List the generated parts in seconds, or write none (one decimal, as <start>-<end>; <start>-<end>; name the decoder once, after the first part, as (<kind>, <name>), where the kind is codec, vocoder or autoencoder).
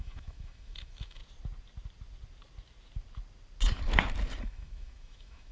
0.0-1.2 (autoencoder, DAC-VAE); 4.4-5.5